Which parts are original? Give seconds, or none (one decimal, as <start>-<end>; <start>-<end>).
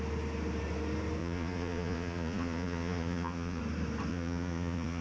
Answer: 0.0-1.2; 3.6-4.1